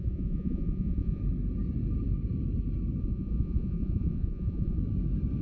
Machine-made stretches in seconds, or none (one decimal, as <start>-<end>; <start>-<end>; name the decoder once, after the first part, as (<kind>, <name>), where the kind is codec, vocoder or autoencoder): 0.0-1.2 (vocoder, Vocos); 3.0-4.8